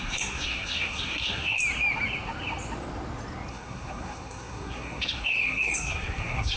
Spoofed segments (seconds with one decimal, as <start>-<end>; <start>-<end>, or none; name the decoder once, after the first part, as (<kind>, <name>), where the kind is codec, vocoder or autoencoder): 0.0-1.6 (codec, SNAC); 3.5-6.6